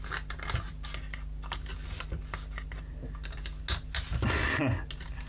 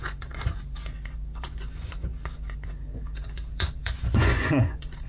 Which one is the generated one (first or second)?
second